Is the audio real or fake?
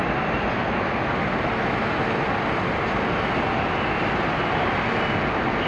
real